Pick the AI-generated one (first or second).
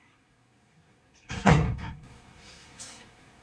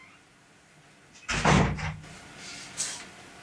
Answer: first